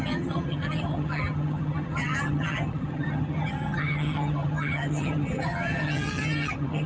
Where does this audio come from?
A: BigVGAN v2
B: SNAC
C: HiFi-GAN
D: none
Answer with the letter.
C